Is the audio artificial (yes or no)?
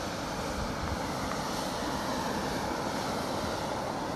no